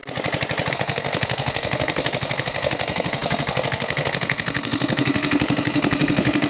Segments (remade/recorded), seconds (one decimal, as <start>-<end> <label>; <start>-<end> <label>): 0.0-0.7 recorded; 0.7-6.5 remade